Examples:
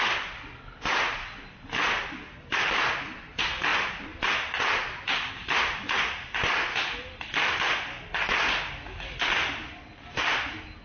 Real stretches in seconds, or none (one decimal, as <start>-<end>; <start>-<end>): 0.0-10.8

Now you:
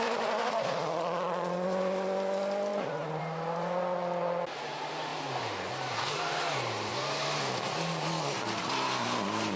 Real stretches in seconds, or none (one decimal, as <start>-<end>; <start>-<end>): 0.0-9.6

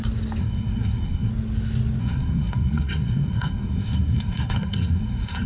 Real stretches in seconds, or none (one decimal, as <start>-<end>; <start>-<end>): 0.0-0.4; 1.3-2.0

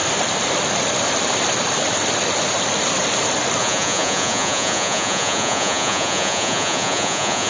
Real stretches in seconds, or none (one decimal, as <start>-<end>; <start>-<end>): 0.0-3.6

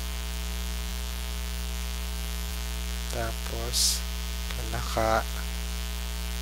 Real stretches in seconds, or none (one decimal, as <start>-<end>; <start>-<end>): 3.5-4.5

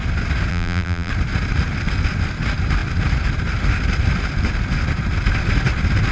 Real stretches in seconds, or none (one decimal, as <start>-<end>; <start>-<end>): 0.0-0.5; 1.1-6.1